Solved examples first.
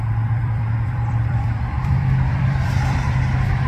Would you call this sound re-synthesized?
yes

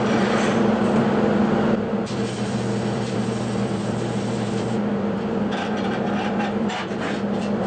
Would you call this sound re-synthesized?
yes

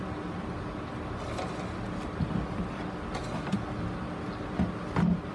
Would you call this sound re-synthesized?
no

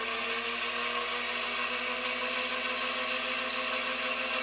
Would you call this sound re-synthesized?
no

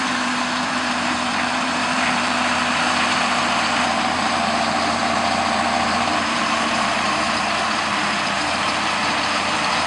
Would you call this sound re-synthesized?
yes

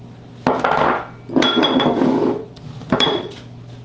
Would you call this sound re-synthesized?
no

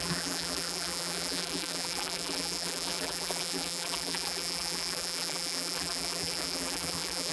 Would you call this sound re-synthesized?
yes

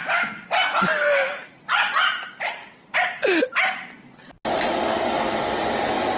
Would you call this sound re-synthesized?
no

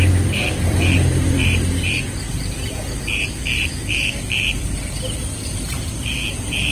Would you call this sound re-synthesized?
yes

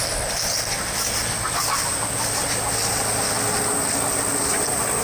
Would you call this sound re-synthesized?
no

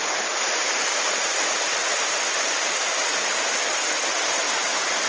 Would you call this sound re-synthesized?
no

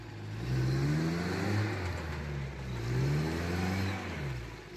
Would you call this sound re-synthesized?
no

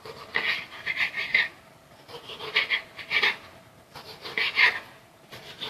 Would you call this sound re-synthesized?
yes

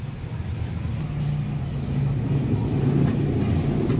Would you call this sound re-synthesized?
no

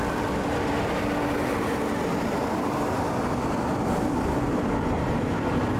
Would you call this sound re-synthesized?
yes